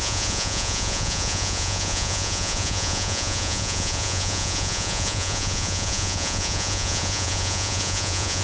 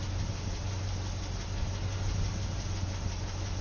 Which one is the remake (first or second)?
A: first